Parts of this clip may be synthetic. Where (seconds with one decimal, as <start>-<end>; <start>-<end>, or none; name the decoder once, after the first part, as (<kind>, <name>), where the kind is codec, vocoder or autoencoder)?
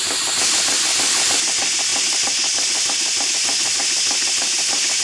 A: none